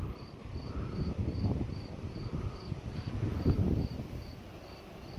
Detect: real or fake real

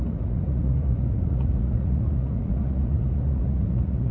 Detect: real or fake fake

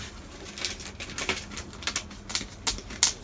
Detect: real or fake real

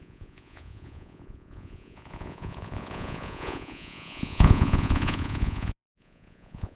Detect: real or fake fake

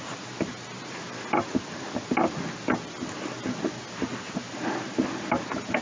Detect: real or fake real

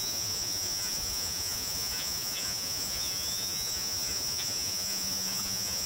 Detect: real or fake fake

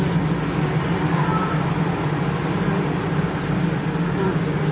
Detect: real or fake real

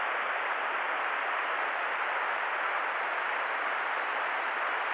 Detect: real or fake real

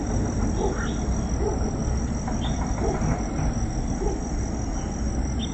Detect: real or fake real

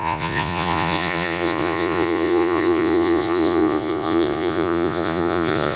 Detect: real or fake fake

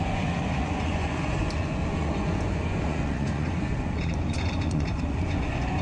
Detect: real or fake fake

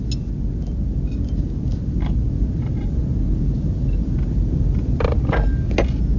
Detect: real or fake real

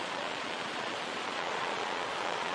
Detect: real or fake fake